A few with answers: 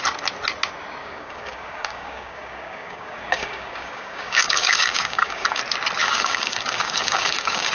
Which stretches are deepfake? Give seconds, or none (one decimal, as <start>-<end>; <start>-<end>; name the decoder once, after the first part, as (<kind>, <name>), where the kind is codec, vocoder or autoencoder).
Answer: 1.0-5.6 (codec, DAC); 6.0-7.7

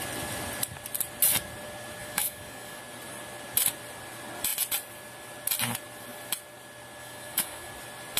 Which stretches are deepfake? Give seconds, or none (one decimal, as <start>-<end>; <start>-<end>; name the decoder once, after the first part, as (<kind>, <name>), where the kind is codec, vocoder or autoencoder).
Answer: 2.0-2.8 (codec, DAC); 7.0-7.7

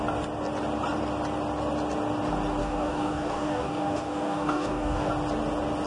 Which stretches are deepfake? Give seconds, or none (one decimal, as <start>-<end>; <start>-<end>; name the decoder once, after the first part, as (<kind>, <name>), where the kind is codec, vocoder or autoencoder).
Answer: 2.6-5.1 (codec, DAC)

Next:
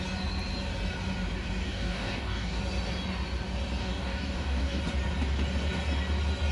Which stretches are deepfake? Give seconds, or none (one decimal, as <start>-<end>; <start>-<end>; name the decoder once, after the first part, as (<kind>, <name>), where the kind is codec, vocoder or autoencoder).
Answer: 1.6-2.6 (codec, DAC); 3.8-4.8

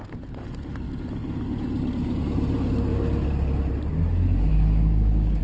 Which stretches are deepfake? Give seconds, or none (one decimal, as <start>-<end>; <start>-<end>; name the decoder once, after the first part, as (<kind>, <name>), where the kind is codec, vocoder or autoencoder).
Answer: 4.5-5.4 (codec, DAC)